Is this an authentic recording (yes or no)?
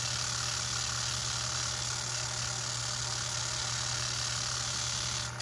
yes